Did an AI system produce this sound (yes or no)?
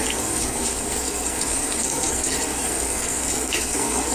yes